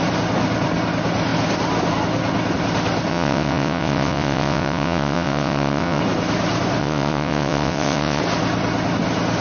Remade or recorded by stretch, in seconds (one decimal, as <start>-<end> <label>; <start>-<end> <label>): 0.0-3.1 recorded; 3.1-6.0 remade; 6.0-6.8 recorded; 6.8-8.2 remade; 8.2-9.4 recorded